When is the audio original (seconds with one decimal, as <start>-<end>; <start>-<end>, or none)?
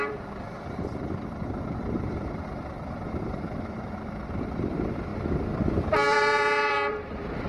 5.1-5.6; 7.0-7.5